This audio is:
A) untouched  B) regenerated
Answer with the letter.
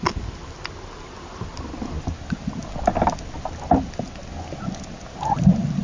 A